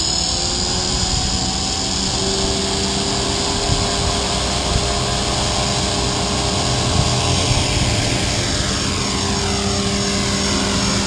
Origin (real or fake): real